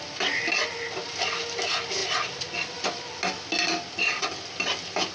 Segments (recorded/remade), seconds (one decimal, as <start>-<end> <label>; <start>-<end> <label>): 0.0-5.1 recorded